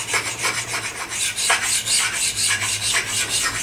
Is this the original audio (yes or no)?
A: yes